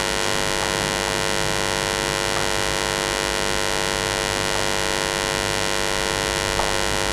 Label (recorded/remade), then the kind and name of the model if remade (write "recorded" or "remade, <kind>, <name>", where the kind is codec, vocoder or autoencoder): recorded